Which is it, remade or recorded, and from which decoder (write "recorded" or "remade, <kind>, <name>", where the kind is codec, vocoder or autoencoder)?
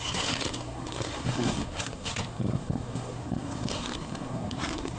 remade, codec, SNAC